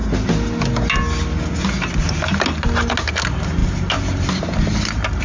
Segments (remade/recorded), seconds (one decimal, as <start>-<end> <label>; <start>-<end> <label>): 0.0-5.2 recorded